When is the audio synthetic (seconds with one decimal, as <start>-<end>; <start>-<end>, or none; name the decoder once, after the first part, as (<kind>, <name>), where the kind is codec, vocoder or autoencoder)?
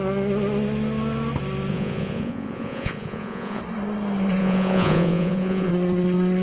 1.7-3.6 (vocoder, Vocos); 4.4-5.7